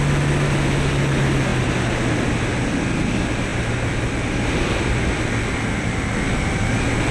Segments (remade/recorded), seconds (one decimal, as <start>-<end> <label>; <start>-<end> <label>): 0.0-3.5 recorded; 3.5-4.4 remade; 4.4-7.1 recorded